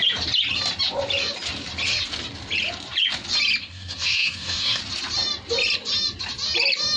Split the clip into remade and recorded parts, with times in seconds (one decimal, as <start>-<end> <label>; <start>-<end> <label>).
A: 0.0-3.6 recorded; 3.6-4.8 remade; 4.8-7.0 recorded